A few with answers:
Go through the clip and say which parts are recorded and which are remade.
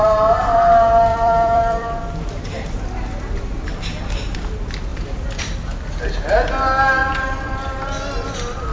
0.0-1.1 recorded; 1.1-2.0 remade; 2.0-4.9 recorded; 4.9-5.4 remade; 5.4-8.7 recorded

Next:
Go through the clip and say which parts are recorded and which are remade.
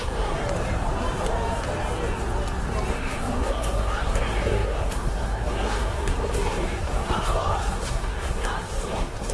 0.0-0.4 remade; 0.4-2.9 recorded; 2.9-9.3 remade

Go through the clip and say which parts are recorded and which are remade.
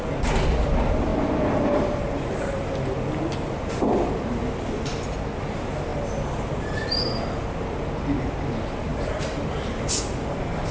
0.0-5.9 recorded; 5.9-7.0 remade; 7.0-8.9 recorded; 8.9-10.7 remade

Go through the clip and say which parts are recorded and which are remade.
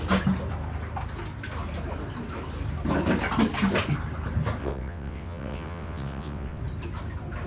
0.0-4.6 recorded; 4.6-6.6 remade; 6.6-7.5 recorded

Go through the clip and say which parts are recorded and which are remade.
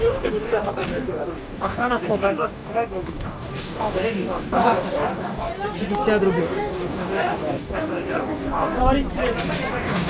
0.0-5.5 remade; 5.5-6.4 recorded; 6.4-8.8 remade; 8.8-9.7 recorded; 9.7-10.1 remade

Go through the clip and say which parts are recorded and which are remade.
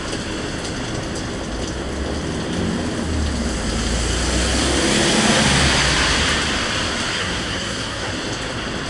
0.0-7.2 recorded; 7.2-8.1 remade; 8.1-8.9 recorded